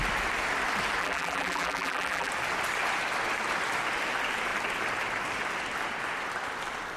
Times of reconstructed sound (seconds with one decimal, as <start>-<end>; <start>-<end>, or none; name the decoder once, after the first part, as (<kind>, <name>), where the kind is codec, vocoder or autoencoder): 1.0-2.3 (vocoder, BigVGAN v2)